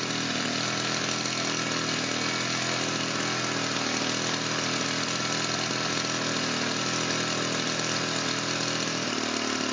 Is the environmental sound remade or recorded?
recorded